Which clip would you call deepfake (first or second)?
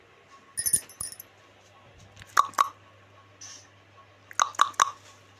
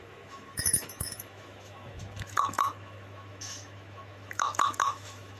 second